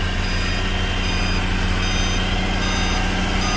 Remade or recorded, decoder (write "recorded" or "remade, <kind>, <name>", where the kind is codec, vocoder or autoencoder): recorded